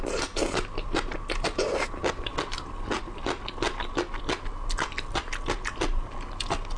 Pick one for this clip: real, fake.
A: real